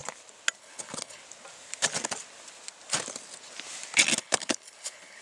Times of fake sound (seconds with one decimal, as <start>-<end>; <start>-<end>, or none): 0.6-1.2; 4.2-5.2